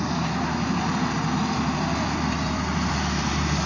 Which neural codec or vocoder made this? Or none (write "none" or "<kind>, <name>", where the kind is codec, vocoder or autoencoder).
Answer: none